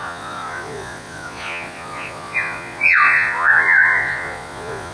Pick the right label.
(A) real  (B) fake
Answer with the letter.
B